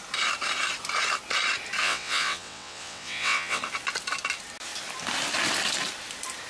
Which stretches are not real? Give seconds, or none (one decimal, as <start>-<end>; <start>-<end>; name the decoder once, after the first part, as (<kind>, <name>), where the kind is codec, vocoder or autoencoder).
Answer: 1.8-3.6 (vocoder, WaveNeXt)